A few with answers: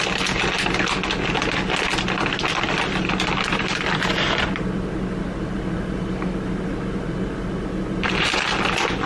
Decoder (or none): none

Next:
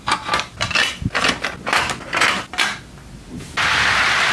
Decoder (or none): none